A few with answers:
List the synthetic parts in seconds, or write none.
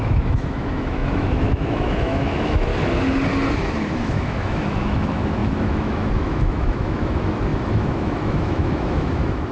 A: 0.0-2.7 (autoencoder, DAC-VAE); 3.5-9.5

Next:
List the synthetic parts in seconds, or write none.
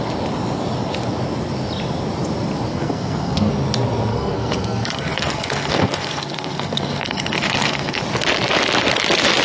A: 2.7-3.5 (codec, SNAC); 4.1-8.0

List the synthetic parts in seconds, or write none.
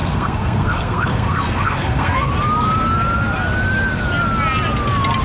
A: 0.0-2.3 (codec, SNAC)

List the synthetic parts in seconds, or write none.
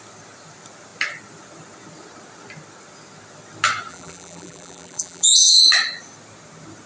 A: 3.9-5.6 (vocoder, BigVGAN v2)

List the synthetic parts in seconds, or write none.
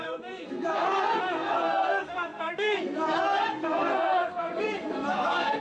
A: 0.0-5.6 (codec, SNAC)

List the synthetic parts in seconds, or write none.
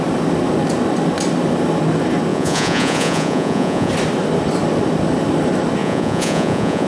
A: 2.3-3.9 (vocoder, Vocos); 5.8-6.9